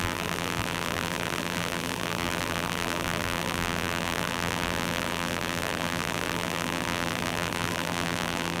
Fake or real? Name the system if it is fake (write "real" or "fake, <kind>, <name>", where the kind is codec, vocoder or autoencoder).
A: fake, vocoder, BigVGAN v2